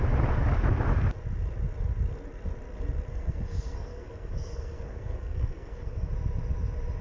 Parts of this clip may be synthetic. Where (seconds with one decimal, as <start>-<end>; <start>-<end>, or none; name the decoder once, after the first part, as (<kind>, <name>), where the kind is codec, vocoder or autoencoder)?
3.1-6.1 (codec, SNAC)